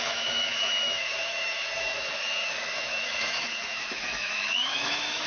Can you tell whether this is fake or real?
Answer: fake